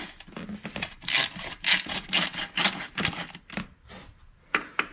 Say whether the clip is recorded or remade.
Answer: recorded